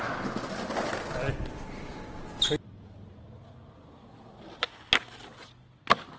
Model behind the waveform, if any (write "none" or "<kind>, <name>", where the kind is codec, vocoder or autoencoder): none